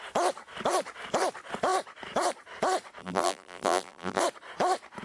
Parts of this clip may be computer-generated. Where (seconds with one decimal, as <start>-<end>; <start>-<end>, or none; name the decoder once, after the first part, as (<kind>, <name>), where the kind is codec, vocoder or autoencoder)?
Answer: 3.0-4.2 (vocoder, BigVGAN v2)